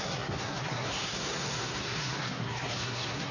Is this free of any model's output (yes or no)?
no